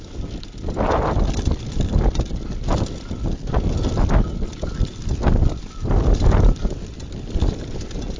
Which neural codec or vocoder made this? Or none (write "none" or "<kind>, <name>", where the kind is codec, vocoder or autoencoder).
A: none